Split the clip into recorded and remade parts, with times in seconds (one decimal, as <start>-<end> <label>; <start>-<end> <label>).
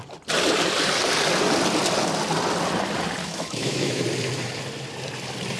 0.0-3.2 recorded; 3.2-4.0 remade; 4.0-5.6 recorded